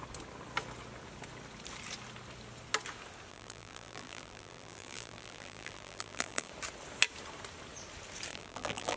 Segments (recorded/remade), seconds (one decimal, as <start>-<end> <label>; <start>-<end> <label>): 0.0-3.3 recorded; 3.3-6.5 remade; 6.5-8.3 recorded; 8.3-9.0 remade